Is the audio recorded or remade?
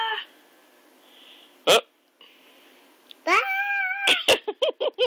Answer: recorded